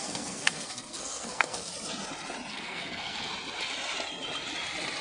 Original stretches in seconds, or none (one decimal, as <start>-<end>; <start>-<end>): 1.7-2.5; 3.3-5.0